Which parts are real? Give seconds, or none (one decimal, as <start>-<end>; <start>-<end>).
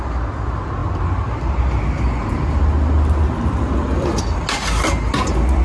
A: 0.0-5.6